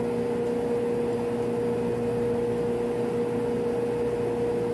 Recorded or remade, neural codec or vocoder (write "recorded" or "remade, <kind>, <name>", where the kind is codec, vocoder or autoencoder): recorded